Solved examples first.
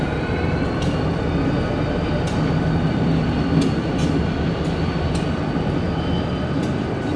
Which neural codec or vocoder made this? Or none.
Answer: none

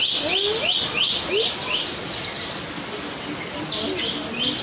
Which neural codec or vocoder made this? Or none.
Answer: none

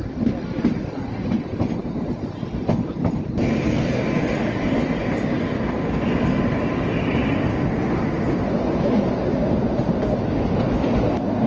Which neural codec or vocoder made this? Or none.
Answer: none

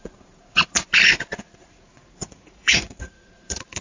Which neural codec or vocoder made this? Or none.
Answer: vocoder, Vocos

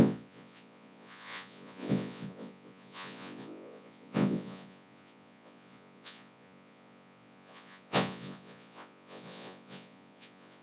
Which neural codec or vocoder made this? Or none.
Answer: vocoder, Vocos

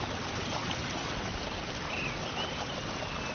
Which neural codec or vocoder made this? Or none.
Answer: none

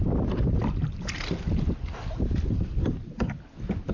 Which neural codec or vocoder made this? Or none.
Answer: none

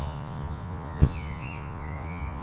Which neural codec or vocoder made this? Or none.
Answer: vocoder, Vocos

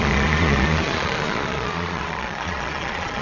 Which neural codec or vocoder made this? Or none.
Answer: vocoder, Vocos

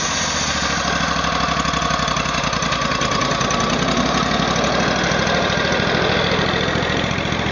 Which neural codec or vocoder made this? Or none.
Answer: none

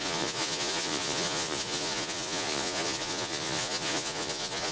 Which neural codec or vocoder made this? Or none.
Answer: vocoder, Vocos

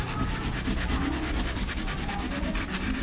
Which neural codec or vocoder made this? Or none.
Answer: none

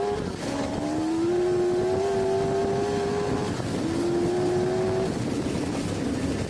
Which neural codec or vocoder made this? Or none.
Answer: none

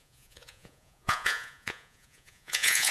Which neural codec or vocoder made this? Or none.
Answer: vocoder, Vocos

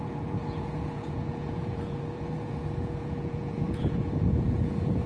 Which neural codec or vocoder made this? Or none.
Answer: vocoder, Vocos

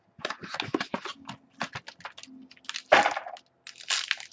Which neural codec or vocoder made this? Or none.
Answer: none